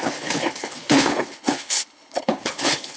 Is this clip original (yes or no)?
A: no